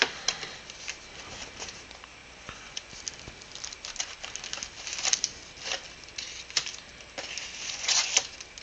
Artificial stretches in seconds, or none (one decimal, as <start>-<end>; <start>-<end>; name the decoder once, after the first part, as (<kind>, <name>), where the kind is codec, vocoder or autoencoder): 2.2-2.9 (vocoder, Vocos); 7.6-8.1